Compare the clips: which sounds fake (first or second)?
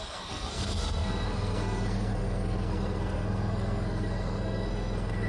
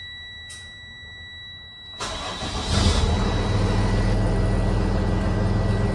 first